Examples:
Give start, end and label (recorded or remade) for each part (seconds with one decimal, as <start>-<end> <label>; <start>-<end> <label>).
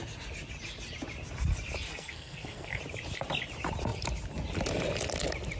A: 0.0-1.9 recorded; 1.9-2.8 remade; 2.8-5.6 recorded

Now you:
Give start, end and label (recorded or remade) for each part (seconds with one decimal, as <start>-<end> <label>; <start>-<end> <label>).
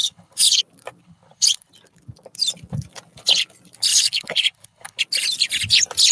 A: 0.0-0.6 remade; 0.6-1.0 recorded; 1.0-1.7 remade; 1.7-3.9 recorded; 3.9-5.0 remade; 5.0-6.1 recorded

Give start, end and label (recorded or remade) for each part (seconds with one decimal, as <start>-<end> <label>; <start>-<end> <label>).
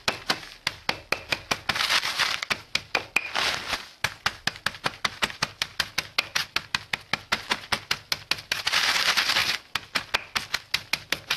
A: 0.0-9.4 recorded; 9.4-10.0 remade; 10.0-11.4 recorded